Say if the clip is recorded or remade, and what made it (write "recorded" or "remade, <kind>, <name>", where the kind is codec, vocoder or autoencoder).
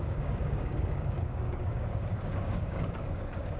remade, codec, DAC